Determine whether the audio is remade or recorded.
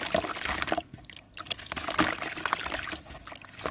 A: recorded